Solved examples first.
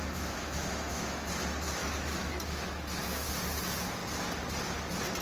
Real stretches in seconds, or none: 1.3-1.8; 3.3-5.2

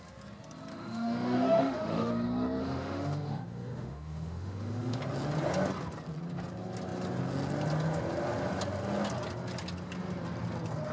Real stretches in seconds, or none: 0.0-0.7; 2.1-2.6; 5.0-10.9

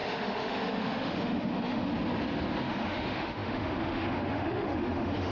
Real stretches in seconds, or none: 1.9-2.6

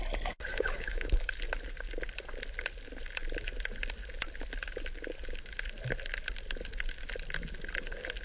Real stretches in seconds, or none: 0.0-0.5; 1.4-8.2